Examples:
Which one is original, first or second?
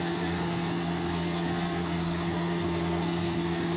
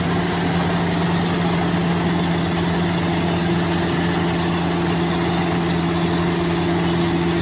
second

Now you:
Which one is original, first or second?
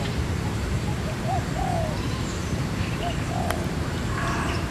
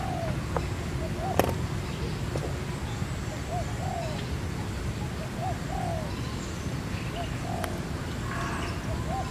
second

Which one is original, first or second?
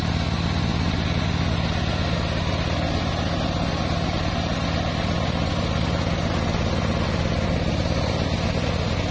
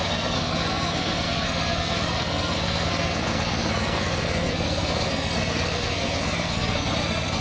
first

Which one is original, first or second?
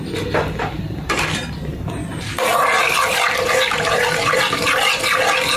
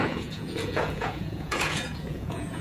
first